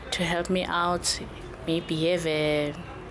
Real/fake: real